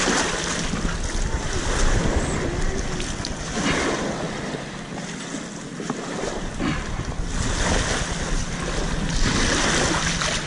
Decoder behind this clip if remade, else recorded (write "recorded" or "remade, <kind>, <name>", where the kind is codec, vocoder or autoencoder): recorded